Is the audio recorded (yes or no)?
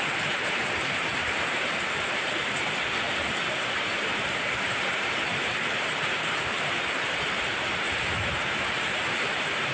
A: no